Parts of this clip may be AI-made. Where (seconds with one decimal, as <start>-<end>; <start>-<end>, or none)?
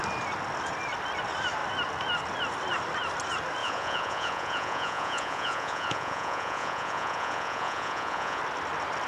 3.6-8.4